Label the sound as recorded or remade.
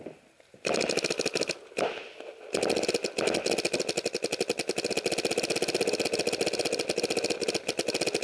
recorded